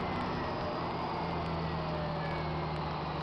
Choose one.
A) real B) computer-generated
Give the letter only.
A